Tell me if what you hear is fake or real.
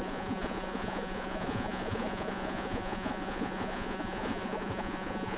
fake